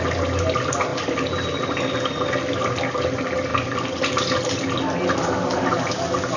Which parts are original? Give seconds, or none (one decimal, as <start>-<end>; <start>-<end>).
0.0-6.4

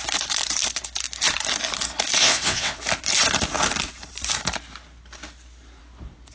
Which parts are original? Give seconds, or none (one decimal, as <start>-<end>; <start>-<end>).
0.0-2.2; 2.8-6.3